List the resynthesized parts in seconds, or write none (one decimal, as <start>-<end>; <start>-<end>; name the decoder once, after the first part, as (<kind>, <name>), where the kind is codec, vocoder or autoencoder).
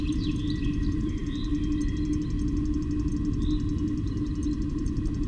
0.0-1.5 (vocoder, BigVGAN v2); 4.7-5.3